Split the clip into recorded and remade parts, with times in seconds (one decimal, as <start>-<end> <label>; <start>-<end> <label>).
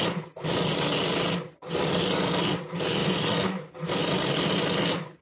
0.0-5.2 recorded